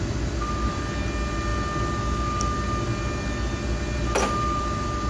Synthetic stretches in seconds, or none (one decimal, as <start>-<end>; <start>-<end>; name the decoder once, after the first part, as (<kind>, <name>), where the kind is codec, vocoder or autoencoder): none

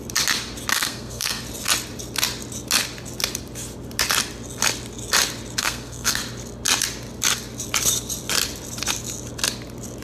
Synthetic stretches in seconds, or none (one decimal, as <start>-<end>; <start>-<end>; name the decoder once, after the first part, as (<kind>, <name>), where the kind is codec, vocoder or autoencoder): 0.7-1.4 (codec, SNAC); 5.6-6.2

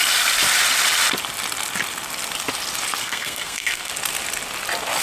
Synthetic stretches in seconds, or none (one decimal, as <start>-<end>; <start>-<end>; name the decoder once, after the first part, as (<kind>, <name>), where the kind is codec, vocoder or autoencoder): 3.0-3.9 (codec, SNAC)

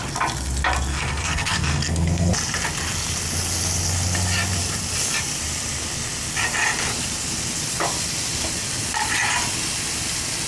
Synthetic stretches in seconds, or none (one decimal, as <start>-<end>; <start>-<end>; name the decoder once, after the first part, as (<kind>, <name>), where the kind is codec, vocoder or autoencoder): 0.9-2.3 (codec, SNAC)

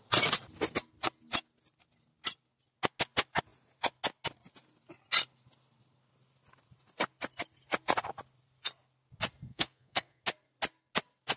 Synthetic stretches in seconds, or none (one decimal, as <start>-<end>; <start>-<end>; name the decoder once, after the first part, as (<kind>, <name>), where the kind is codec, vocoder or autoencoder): 9.5-10.2 (codec, SNAC)

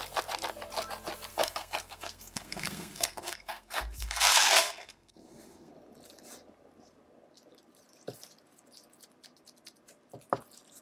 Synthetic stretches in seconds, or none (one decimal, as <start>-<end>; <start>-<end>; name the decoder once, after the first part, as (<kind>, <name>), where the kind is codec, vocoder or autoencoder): 1.3-5.7 (codec, SNAC)

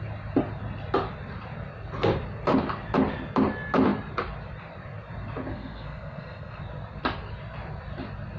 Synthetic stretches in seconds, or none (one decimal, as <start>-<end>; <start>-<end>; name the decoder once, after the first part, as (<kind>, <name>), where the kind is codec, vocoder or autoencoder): 5.5-6.6 (codec, SNAC)

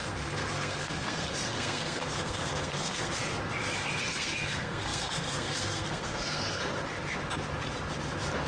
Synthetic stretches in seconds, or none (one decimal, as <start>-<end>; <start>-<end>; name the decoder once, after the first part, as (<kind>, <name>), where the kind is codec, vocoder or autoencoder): 0.0-3.2 (codec, SNAC); 4.0-6.6